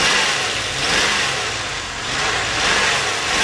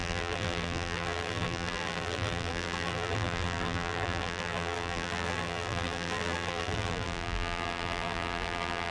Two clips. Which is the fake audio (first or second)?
second